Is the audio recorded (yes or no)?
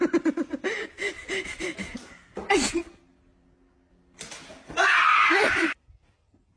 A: yes